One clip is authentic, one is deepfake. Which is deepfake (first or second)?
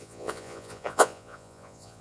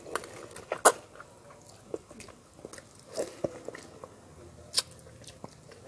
first